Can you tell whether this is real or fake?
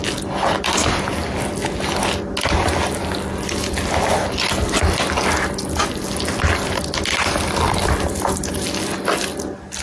real